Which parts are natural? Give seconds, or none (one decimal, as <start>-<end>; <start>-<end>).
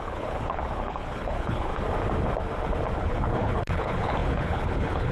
1.7-3.0